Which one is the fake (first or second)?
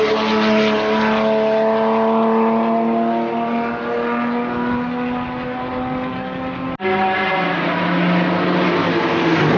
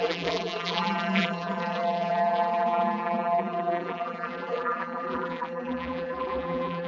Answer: second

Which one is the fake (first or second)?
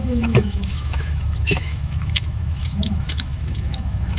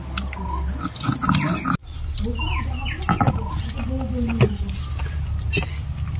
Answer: first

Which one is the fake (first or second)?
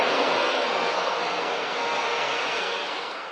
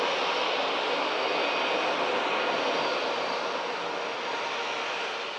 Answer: first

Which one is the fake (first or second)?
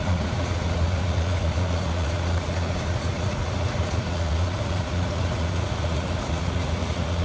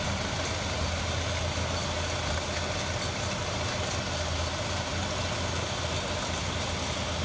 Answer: first